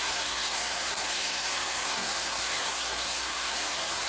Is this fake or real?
fake